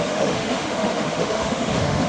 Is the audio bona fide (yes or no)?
no